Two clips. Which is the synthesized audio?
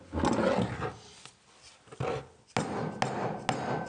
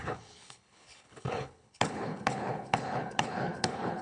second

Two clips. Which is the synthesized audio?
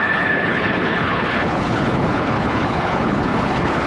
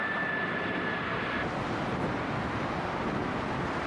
first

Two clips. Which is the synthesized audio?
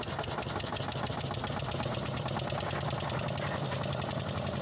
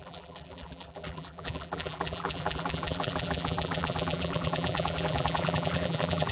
second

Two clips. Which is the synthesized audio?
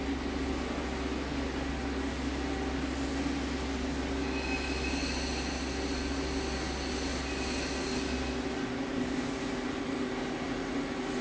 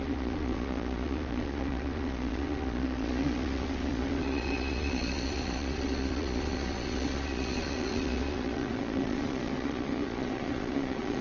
second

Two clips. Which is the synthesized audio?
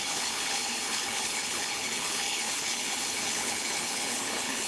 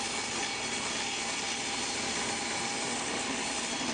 first